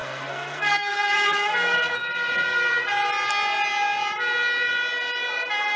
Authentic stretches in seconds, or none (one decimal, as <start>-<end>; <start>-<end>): 2.1-5.8